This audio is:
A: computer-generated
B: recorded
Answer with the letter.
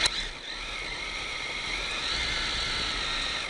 B